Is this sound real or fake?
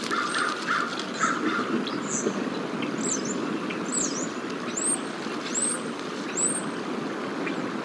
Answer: real